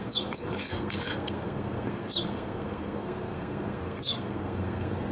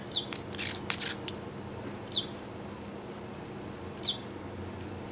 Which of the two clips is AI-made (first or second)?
first